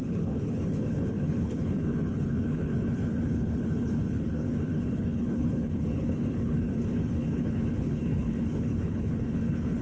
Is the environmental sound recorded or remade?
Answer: remade